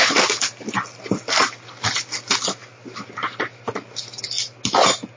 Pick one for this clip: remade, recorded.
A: recorded